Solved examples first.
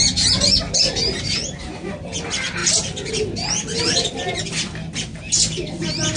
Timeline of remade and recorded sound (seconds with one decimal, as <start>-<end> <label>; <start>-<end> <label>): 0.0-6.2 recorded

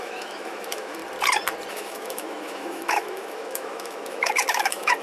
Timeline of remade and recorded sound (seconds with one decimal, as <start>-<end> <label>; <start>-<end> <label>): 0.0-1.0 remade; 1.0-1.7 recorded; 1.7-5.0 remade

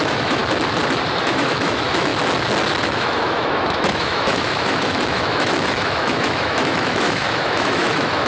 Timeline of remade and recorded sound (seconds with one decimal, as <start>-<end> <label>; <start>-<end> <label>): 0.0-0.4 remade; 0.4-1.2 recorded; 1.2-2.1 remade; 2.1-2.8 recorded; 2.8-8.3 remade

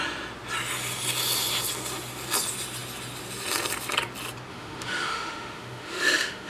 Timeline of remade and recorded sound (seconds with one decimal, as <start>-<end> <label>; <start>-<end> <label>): 0.0-4.5 recorded; 4.5-6.5 remade